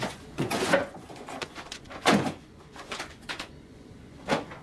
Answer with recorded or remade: remade